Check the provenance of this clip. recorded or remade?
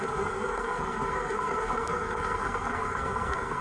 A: remade